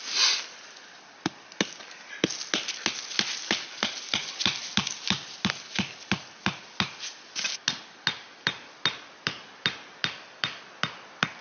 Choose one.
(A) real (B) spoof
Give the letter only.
A